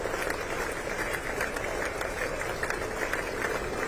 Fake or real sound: fake